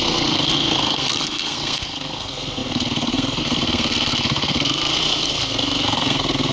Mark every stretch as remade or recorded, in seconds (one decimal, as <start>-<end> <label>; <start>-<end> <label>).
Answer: 0.0-6.5 remade